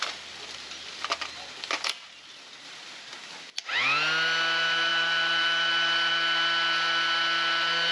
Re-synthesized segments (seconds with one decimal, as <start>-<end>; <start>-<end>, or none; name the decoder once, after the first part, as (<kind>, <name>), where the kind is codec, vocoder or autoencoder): 4.9-6.1 (vocoder, BigVGAN v2)